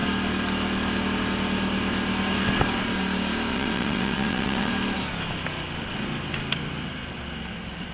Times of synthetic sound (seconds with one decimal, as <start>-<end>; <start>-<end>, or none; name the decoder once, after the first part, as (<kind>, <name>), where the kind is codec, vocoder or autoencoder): 3.5-4.7 (vocoder, WaveNeXt)